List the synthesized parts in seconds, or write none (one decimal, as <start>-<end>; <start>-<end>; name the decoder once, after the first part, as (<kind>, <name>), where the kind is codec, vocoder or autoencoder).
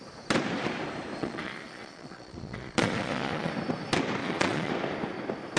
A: 1.2-3.5 (vocoder, Vocos); 4.2-4.7